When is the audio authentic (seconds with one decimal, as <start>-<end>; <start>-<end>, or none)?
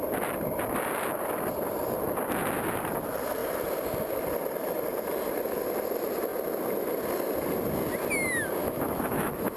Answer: 0.0-8.6